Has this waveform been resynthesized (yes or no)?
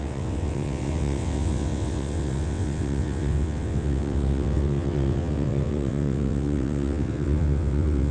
yes